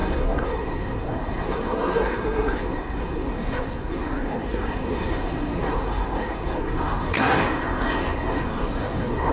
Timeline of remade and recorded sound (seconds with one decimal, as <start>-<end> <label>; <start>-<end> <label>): 0.0-9.3 remade